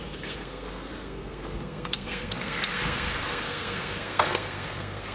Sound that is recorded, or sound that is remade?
remade